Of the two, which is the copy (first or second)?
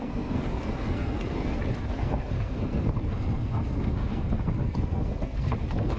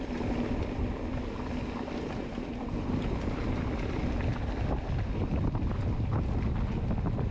first